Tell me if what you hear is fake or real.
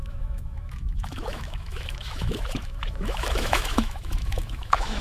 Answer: fake